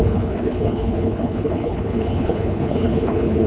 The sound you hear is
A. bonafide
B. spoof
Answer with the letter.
B